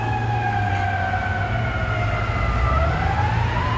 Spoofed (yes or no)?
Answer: no